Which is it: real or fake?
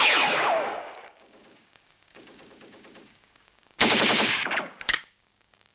fake